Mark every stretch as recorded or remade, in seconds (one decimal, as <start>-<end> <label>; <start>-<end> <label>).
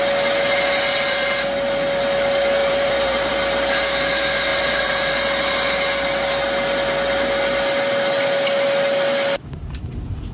0.0-2.6 recorded; 2.6-3.3 remade; 3.3-4.5 recorded; 4.5-5.1 remade; 5.1-10.3 recorded